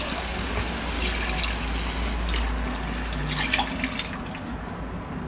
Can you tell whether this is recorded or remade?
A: recorded